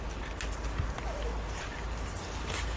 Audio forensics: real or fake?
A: real